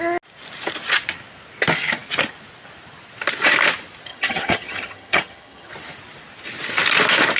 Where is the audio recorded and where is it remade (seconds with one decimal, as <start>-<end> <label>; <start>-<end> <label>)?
0.0-4.1 recorded; 4.1-5.7 remade; 5.7-7.4 recorded